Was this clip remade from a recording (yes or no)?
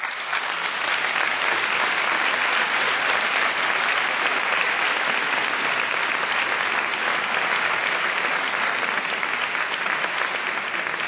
no